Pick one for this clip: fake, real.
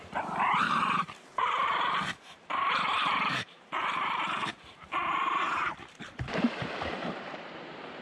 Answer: fake